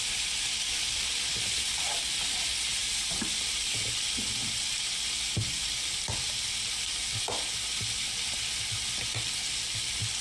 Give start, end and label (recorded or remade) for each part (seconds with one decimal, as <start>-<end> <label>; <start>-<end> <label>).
0.0-10.2 recorded